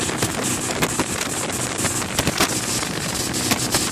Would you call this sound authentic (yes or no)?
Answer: yes